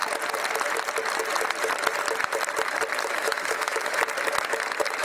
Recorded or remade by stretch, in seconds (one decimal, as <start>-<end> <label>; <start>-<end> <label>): 0.0-3.0 recorded; 3.0-4.0 remade; 4.0-5.0 recorded